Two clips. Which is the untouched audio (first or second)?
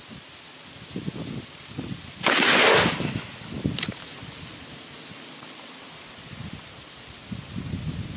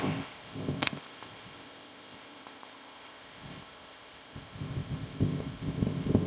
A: first